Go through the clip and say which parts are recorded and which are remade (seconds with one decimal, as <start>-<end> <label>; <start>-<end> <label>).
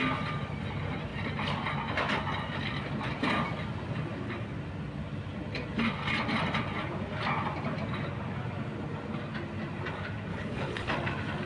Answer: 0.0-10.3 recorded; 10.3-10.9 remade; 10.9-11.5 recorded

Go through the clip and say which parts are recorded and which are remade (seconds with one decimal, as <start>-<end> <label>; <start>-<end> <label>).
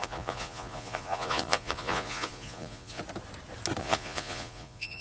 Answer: 0.0-3.0 remade; 3.0-3.8 recorded; 3.8-5.0 remade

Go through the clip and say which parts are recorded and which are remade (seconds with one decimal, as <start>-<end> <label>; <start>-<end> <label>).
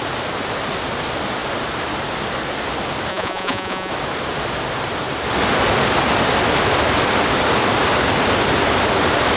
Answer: 0.0-3.1 recorded; 3.1-3.9 remade; 3.9-9.4 recorded